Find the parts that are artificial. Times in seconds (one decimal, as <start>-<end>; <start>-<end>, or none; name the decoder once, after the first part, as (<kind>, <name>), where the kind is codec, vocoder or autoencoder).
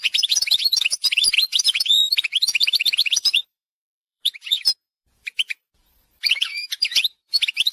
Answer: 0.0-7.7 (vocoder, Vocos)